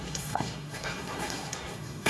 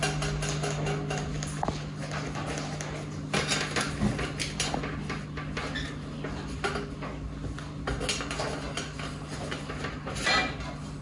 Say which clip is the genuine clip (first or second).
second